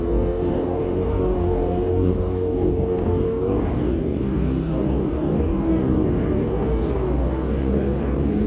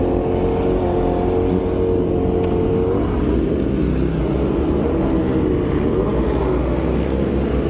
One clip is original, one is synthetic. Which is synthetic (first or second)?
first